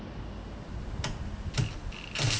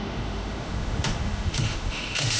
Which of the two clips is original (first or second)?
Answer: first